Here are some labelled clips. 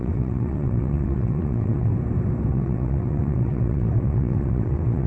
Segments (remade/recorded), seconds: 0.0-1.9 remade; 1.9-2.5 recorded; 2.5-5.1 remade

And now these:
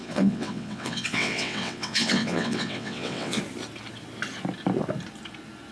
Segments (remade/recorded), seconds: 0.0-3.4 remade; 3.4-5.7 recorded

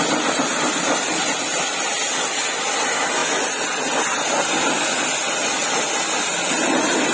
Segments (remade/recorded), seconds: 0.0-7.1 recorded

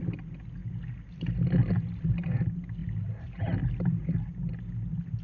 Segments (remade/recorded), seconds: 0.0-5.2 recorded

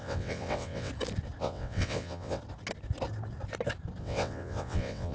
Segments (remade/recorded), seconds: 0.0-0.9 remade; 0.9-1.4 recorded; 1.4-2.4 remade; 2.4-4.0 recorded; 4.0-5.1 remade

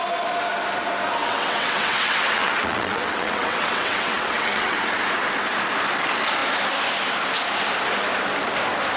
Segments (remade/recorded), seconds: 0.0-1.2 recorded; 1.2-4.9 remade; 4.9-9.0 recorded

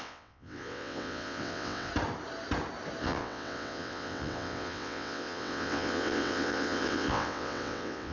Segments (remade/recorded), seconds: 0.0-1.9 remade; 1.9-3.0 recorded; 3.0-8.1 remade

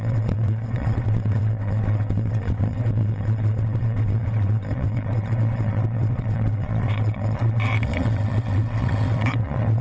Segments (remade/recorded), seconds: 0.0-9.8 remade